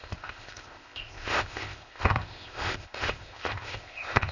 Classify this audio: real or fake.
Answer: fake